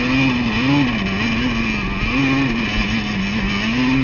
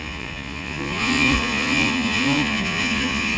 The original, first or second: first